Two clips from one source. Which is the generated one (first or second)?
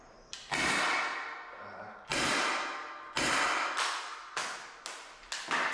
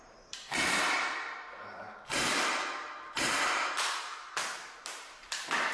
second